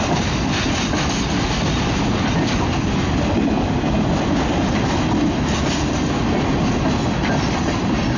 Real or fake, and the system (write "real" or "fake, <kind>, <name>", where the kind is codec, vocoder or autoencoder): real